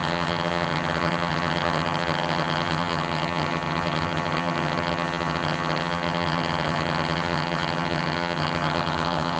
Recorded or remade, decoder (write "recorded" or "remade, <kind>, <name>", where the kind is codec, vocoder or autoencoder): remade, vocoder, HiFi-GAN